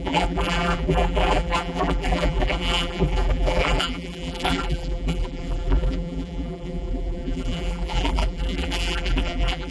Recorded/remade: remade